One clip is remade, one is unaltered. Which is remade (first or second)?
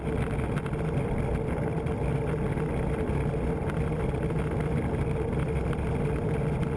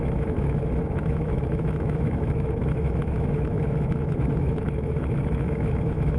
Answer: second